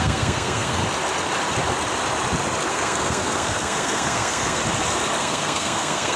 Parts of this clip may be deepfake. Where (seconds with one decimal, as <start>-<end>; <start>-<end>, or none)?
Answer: 0.0-0.8; 2.7-4.6; 5.2-6.2